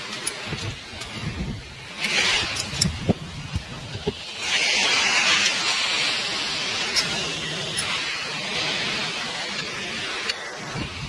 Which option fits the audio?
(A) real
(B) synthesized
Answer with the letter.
A